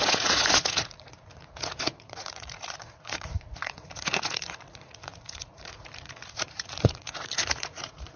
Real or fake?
fake